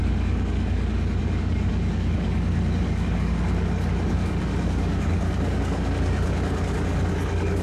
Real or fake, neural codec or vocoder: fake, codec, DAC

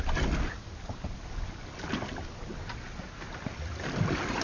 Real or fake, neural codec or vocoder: real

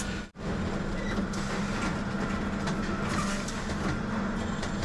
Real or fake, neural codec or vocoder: real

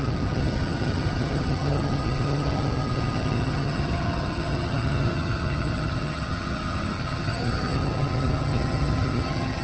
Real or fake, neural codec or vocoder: fake, vocoder, HiFi-GAN